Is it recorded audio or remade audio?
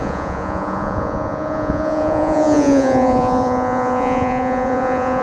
remade